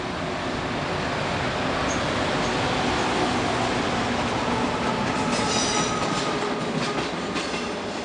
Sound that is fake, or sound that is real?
real